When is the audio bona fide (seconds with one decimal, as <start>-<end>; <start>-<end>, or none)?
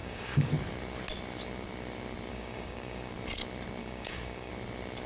0.5-2.3; 3.1-3.8; 4.5-5.1